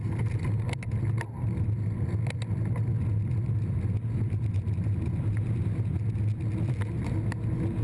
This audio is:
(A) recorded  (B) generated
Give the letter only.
A